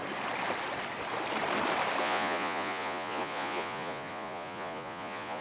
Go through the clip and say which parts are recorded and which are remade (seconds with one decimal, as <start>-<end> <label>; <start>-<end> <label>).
0.0-2.0 recorded; 2.0-5.4 remade